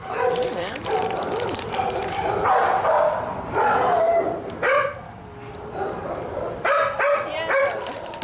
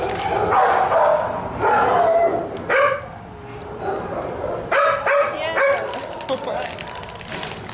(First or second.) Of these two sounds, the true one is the second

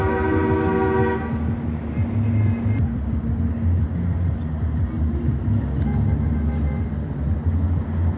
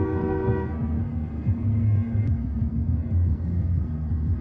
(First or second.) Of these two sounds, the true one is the first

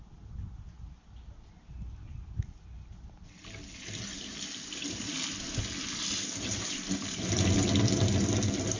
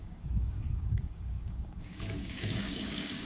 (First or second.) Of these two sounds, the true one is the first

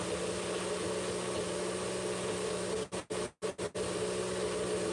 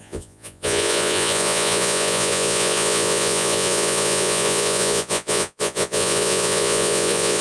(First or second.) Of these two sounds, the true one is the first